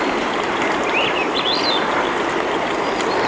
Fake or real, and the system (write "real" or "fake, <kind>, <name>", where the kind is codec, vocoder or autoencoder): real